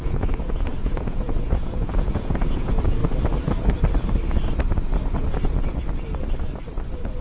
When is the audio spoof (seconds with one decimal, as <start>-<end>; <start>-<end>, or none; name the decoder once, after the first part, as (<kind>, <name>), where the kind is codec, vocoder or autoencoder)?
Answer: 0.0-3.0 (vocoder, Vocos)